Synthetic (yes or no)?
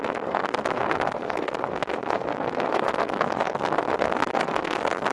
yes